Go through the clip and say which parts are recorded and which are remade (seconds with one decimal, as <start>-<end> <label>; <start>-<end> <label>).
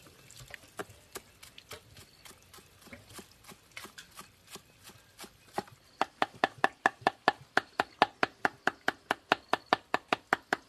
0.0-0.8 recorded; 0.8-5.1 remade; 5.1-10.7 recorded